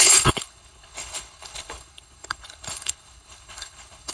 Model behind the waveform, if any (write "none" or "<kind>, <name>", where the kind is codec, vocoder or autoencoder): codec, HILCodec